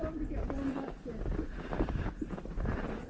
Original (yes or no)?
no